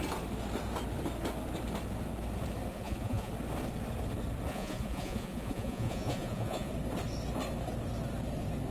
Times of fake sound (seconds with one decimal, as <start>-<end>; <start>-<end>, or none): 2.7-3.3; 4.5-6.7